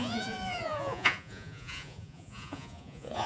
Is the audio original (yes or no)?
no